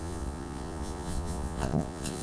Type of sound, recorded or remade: remade